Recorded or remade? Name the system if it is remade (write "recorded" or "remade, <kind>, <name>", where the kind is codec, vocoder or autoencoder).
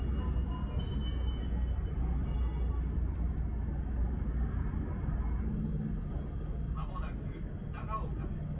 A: recorded